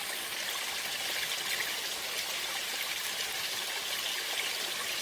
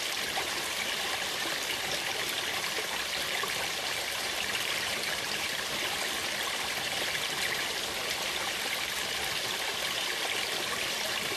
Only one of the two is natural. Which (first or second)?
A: first